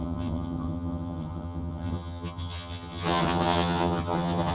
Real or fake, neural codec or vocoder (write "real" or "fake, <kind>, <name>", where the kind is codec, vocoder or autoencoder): fake, vocoder, HiFi-GAN